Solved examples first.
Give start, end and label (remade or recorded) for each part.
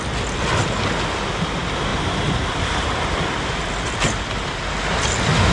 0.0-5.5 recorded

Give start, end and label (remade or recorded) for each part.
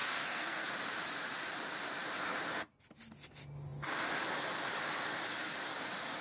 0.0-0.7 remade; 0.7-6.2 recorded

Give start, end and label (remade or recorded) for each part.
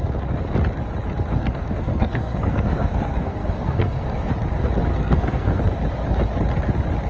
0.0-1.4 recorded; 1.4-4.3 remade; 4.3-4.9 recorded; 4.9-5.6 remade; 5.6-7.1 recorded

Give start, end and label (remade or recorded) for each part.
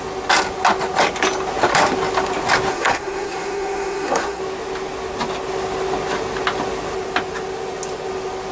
0.0-2.7 recorded; 2.7-4.4 remade; 4.4-8.5 recorded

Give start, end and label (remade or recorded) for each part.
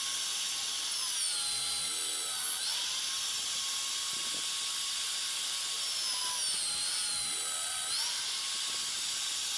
0.0-9.6 recorded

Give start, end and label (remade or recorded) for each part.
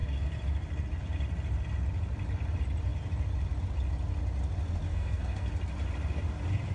0.0-4.9 recorded; 4.9-5.5 remade; 5.5-6.7 recorded